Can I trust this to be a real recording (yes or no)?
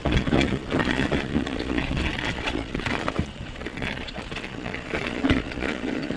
no